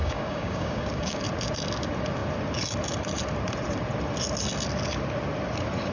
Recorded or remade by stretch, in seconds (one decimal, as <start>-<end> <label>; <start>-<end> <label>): 0.0-1.2 remade; 1.2-5.9 recorded